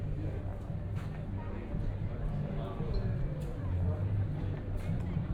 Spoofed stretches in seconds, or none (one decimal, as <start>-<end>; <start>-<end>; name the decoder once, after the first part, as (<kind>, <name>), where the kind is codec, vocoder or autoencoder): none

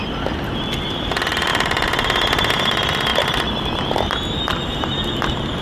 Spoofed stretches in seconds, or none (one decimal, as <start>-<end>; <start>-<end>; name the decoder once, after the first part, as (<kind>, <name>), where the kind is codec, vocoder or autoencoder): 1.5-2.5 (vocoder, BigVGAN v2)